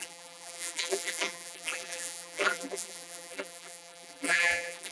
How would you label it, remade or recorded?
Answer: remade